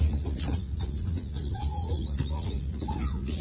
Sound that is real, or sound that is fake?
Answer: fake